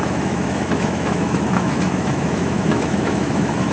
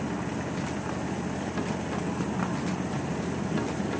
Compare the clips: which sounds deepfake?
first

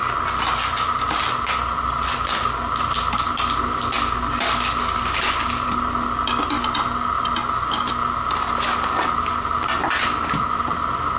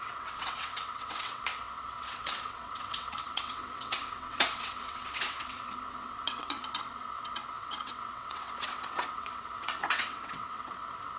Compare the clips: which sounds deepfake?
second